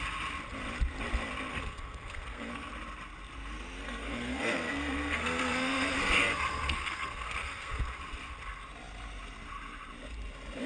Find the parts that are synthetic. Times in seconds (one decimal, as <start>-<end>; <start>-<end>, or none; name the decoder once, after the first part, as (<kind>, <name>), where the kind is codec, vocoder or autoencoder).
1.5-2.7 (codec, SNAC); 3.8-7.8